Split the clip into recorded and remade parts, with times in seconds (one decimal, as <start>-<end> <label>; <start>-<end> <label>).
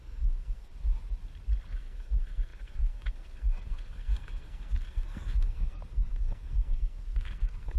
0.0-0.7 remade; 0.7-1.7 recorded; 1.7-7.8 remade